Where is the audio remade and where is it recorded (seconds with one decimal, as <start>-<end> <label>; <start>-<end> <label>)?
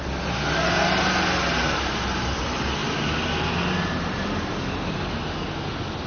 0.0-1.6 recorded; 1.6-2.4 remade; 2.4-6.1 recorded